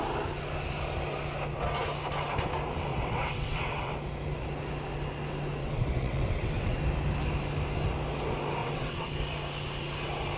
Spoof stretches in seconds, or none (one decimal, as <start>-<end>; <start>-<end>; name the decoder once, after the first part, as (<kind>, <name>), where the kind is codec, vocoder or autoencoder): 2.9-3.9 (vocoder, WaveNeXt); 5.6-6.8; 8.6-9.1